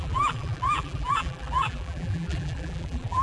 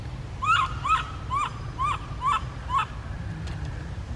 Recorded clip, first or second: second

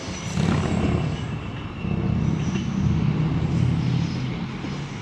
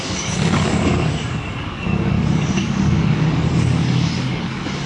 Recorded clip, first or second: first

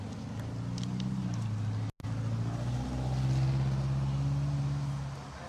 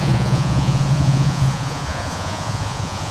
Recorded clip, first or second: first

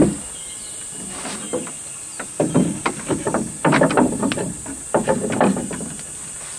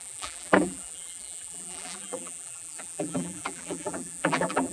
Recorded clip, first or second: first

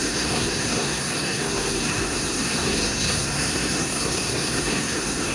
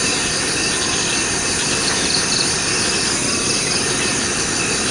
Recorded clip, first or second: second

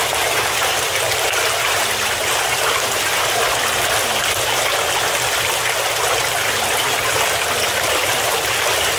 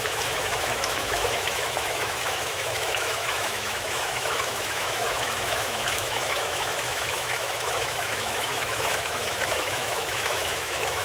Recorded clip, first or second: first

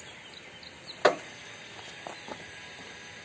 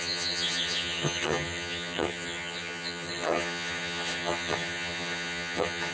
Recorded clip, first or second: first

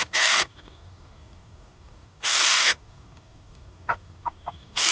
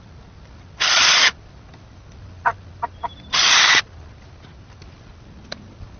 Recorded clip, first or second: second